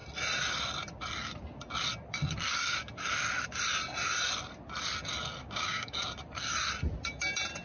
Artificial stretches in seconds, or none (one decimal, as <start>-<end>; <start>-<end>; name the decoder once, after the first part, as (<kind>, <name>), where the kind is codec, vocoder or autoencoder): 5.4-6.0 (codec, DAC)